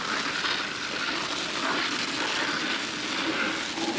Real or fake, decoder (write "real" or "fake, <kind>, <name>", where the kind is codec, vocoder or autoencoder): real